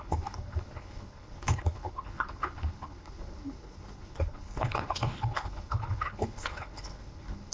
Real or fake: fake